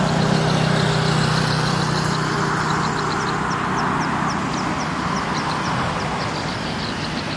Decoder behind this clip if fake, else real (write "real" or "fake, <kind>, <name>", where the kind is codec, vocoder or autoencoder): real